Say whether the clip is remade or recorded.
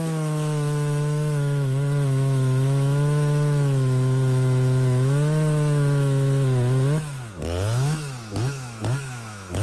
remade